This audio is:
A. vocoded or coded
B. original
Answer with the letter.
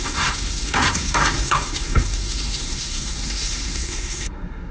A